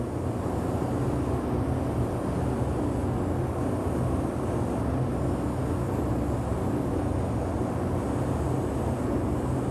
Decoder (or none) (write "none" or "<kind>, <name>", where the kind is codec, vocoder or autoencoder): none